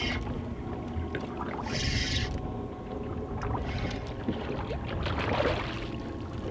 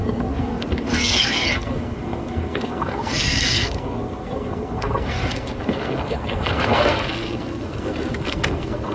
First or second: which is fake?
second